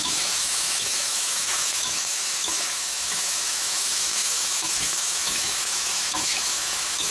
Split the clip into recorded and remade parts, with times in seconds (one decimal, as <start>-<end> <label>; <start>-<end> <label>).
0.0-7.1 remade